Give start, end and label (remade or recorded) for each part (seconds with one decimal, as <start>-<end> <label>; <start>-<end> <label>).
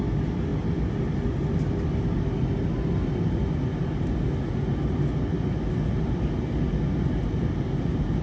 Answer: 0.0-8.2 recorded